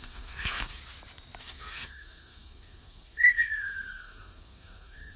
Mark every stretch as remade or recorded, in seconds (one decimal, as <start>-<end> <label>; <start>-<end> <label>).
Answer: 0.0-0.8 remade; 0.8-1.4 recorded; 1.4-5.2 remade